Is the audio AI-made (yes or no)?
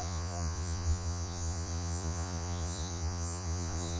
yes